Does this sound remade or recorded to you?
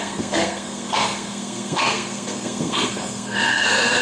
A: remade